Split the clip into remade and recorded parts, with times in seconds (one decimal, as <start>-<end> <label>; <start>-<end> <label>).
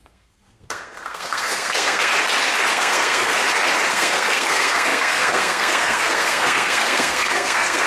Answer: 0.0-2.1 remade; 2.1-2.7 recorded; 2.7-3.4 remade; 3.4-3.9 recorded; 3.9-7.9 remade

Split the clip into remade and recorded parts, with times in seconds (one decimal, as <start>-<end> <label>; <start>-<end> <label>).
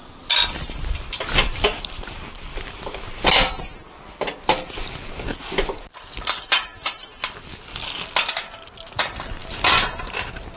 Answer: 0.0-10.6 recorded